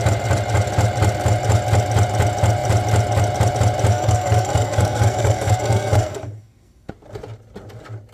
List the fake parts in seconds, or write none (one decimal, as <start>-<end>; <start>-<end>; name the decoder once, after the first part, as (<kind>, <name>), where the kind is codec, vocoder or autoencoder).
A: 3.9-6.9 (codec, SNAC)

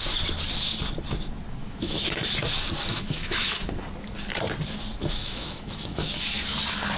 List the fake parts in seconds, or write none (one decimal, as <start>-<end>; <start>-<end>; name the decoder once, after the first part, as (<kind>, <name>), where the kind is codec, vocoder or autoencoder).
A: 1.6-2.2 (autoencoder, DAC-VAE); 2.9-3.5; 5.0-6.1

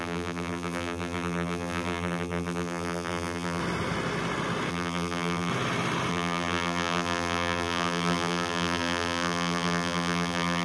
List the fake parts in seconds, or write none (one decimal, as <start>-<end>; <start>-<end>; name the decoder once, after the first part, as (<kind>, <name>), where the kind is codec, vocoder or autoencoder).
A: 0.0-3.6 (vocoder, BigVGAN v2); 4.7-5.5; 6.1-10.6

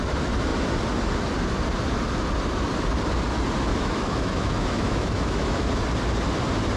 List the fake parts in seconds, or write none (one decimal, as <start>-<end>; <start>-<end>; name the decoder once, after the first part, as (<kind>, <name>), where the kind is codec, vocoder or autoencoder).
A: 3.7-5.7 (autoencoder, DAC-VAE)

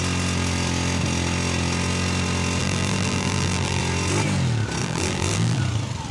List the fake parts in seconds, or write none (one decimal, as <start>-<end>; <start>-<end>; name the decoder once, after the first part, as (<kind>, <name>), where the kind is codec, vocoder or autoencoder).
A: 2.6-3.8 (vocoder, BigVGAN v2); 4.8-5.6

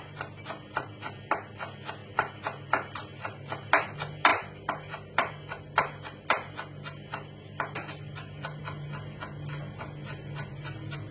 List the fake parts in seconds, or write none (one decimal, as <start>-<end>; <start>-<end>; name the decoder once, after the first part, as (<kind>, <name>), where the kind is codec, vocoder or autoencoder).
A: 2.0-3.7 (vocoder, BigVGAN v2); 4.3-8.6

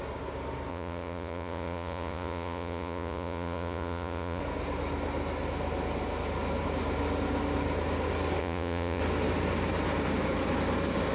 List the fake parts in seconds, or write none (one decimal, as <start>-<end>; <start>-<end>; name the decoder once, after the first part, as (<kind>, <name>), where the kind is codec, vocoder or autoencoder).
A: 0.7-4.4 (vocoder, Vocos); 8.4-9.0